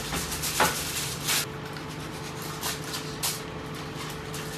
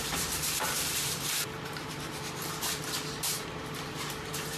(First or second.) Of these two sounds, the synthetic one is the second